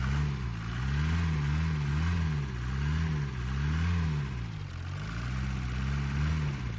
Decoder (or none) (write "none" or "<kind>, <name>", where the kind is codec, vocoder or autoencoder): none